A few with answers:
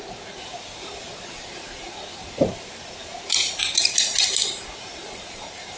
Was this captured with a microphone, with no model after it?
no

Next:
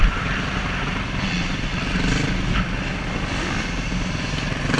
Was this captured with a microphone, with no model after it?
yes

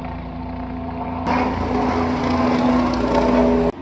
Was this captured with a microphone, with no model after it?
yes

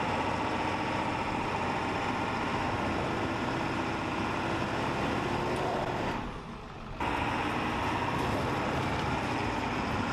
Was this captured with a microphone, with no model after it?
yes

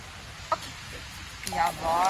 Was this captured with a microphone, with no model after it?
yes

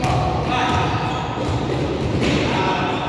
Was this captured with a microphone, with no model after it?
yes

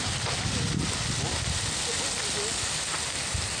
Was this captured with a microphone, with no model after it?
yes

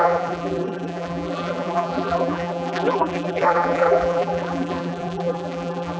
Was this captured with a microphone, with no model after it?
no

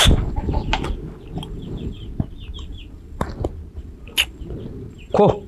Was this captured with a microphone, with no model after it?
yes